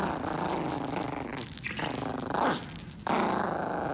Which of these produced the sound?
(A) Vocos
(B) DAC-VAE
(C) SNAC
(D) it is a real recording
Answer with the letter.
D